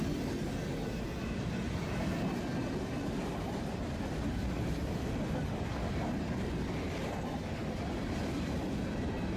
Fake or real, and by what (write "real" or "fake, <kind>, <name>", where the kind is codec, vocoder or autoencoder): real